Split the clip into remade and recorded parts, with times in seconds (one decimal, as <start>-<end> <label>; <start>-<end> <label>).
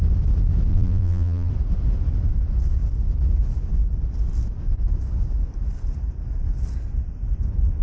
0.0-0.7 recorded; 0.7-1.5 remade; 1.5-7.8 recorded